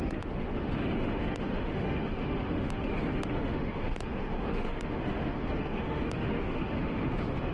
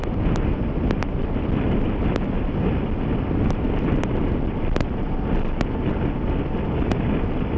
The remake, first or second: first